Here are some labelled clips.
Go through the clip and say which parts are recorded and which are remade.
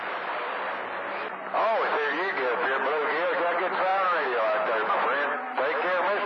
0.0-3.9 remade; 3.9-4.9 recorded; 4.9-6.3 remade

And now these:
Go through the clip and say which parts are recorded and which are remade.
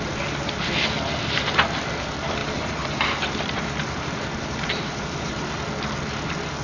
0.0-2.4 recorded; 2.4-5.5 remade; 5.5-6.6 recorded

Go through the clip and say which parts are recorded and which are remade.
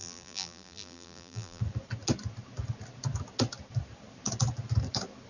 0.0-1.6 remade; 1.6-5.3 recorded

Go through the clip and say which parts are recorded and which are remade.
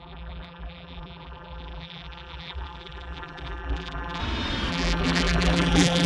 0.0-4.2 remade; 4.2-4.7 recorded; 4.7-6.1 remade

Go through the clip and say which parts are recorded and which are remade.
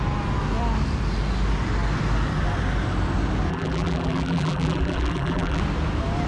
0.0-3.5 recorded; 3.5-5.6 remade; 5.6-6.3 recorded